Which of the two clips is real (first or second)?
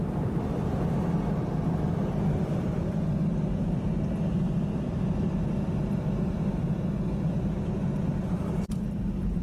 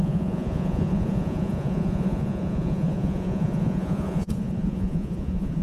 first